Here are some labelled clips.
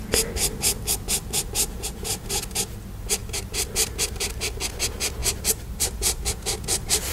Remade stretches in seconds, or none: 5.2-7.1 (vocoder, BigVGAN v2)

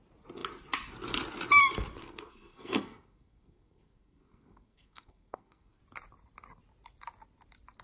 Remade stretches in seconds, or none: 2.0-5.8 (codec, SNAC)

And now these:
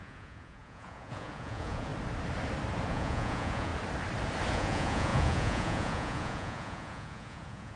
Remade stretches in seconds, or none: 0.0-1.9 (vocoder, Vocos); 2.9-3.7; 4.5-7.8

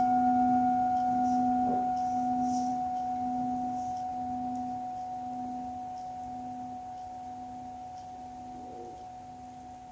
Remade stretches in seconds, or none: none